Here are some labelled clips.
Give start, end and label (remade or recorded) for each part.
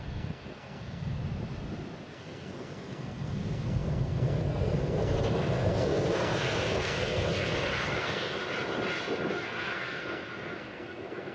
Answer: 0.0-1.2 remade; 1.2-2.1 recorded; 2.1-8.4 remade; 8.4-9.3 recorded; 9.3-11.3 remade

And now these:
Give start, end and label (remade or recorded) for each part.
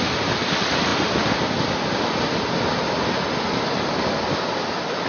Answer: 0.0-5.1 recorded